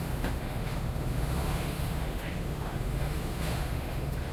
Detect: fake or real fake